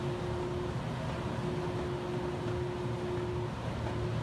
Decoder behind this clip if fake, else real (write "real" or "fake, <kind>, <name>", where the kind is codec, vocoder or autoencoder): real